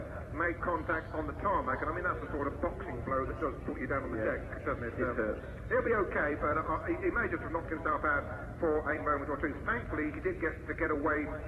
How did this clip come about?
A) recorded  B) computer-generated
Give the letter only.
B